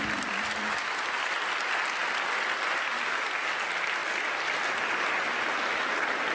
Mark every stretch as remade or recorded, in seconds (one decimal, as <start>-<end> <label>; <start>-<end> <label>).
0.0-6.3 recorded

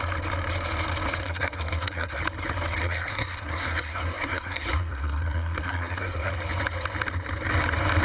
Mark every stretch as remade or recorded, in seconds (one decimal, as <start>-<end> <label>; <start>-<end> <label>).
0.0-1.2 recorded; 1.2-2.2 remade; 2.2-2.8 recorded; 2.8-6.3 remade; 6.3-8.0 recorded

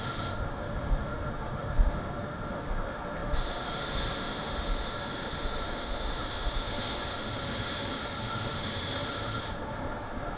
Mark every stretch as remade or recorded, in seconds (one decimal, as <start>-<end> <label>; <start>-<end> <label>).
0.0-10.4 remade

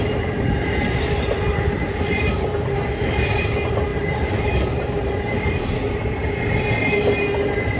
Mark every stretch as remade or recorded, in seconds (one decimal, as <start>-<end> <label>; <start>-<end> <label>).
0.0-3.9 recorded; 3.9-5.6 remade; 5.6-7.8 recorded

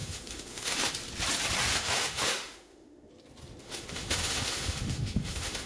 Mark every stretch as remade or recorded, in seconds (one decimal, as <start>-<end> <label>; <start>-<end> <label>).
0.0-0.9 remade; 0.9-1.7 recorded; 1.7-3.1 remade; 3.1-3.6 recorded; 3.6-5.7 remade

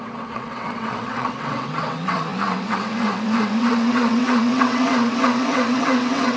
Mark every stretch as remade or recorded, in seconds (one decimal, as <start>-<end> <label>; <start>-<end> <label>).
0.0-6.4 remade

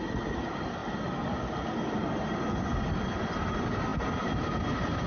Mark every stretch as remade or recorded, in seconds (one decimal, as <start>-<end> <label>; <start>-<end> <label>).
0.0-5.1 recorded

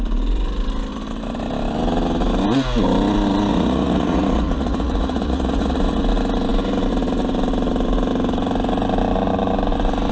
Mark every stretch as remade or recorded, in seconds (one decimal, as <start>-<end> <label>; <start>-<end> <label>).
0.0-3.5 recorded; 3.5-6.0 remade; 6.0-10.1 recorded